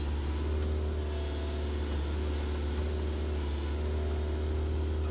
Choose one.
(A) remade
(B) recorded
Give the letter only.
B